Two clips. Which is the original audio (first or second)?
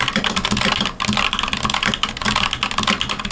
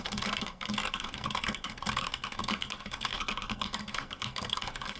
first